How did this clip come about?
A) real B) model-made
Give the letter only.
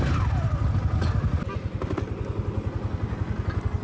A